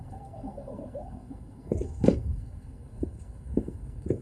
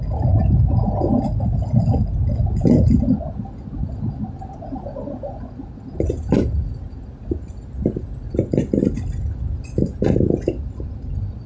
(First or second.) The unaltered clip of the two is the second